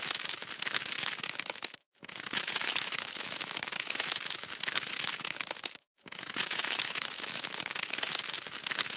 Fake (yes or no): yes